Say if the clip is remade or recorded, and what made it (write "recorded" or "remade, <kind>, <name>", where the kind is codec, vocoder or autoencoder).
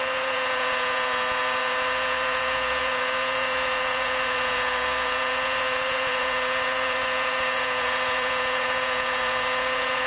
remade, vocoder, Vocos